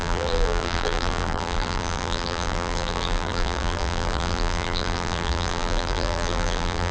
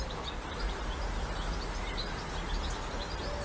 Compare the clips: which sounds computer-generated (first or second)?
first